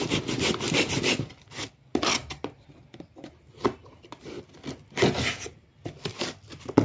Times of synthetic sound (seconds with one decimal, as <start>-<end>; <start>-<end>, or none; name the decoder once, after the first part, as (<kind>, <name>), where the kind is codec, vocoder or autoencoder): none